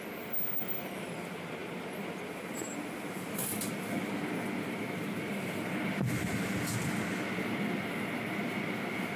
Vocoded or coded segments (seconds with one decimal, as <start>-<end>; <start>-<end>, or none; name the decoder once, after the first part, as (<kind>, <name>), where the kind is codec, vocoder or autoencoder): none

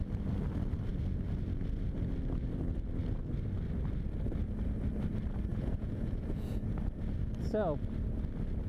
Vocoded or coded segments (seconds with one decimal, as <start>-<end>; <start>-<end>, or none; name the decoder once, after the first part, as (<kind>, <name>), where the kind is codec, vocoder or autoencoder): 5.5-6.8 (vocoder, Vocos)

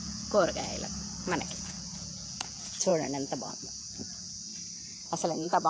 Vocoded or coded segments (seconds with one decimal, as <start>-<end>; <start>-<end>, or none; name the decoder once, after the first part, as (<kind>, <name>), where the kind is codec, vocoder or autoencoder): 0.0-0.7 (vocoder, Vocos); 1.2-2.9; 3.5-4.5; 5.1-5.7

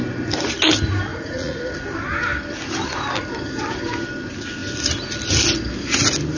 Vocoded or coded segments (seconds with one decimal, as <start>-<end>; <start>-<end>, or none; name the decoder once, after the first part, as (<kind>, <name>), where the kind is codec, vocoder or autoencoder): 1.1-1.6 (vocoder, Vocos)

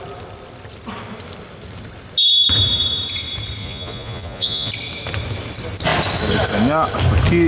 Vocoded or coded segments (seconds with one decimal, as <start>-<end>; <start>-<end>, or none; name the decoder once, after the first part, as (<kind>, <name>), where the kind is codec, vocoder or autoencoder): 3.6-4.7 (vocoder, Vocos)

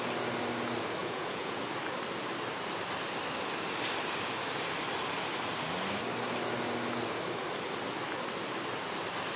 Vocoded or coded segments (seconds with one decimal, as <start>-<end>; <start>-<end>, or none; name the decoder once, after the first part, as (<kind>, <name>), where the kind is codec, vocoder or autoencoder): 1.0-1.6 (vocoder, Vocos)